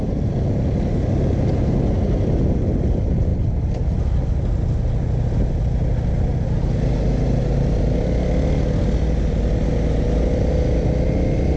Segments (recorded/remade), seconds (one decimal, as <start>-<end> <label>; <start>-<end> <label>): 0.0-11.6 recorded